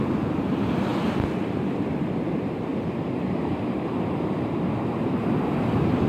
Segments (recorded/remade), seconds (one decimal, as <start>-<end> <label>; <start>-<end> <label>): 0.0-6.1 recorded